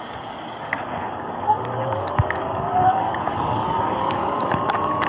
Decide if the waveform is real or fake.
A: fake